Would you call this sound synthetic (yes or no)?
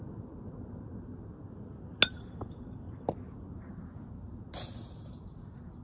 no